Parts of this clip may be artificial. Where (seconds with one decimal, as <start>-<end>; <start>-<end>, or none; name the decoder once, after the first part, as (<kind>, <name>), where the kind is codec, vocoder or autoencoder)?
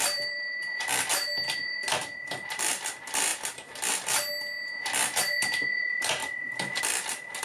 0.0-3.3 (vocoder, BigVGAN v2); 5.2-7.4